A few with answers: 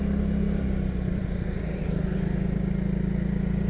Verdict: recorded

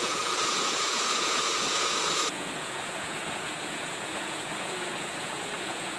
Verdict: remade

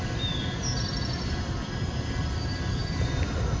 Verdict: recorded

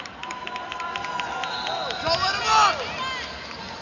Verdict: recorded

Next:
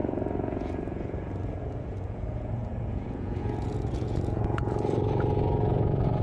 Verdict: remade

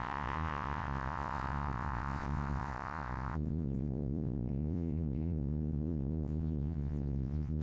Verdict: remade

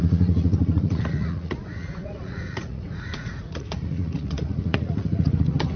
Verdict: remade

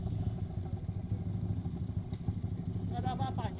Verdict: recorded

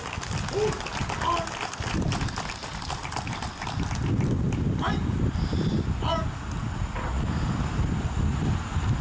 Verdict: recorded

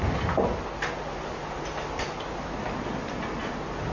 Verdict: recorded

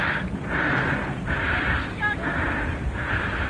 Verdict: recorded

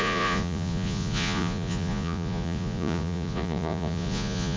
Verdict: remade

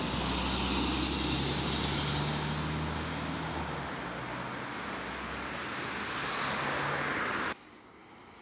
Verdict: recorded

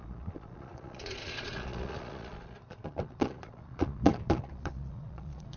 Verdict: remade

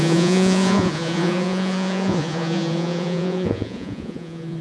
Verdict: remade